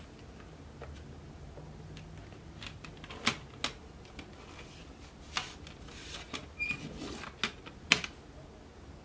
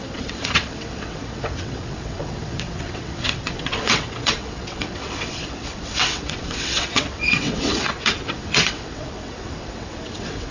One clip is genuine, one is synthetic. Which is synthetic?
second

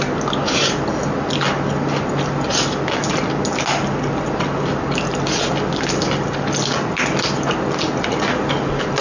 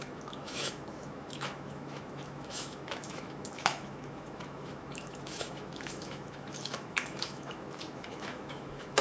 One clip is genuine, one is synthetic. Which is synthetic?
second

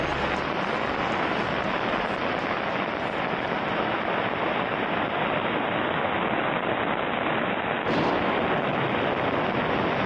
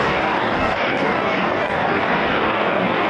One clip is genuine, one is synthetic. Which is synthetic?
second